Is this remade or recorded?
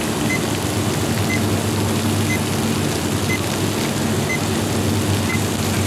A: recorded